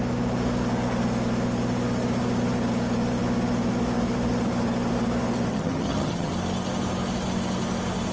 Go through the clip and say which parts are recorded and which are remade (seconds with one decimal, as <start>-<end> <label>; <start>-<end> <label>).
0.0-5.5 recorded; 5.5-6.3 remade; 6.3-8.1 recorded